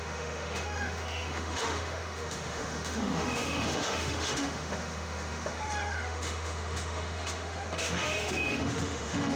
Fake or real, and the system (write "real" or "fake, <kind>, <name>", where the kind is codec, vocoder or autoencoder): fake, autoencoder, DAC-VAE